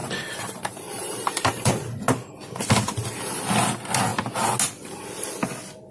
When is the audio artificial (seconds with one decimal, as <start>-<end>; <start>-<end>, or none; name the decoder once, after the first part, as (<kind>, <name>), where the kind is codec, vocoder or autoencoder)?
0.0-1.7 (vocoder, BigVGAN v2)